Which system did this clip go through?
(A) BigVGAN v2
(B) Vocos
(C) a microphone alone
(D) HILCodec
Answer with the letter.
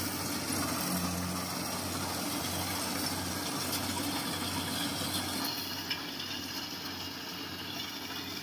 C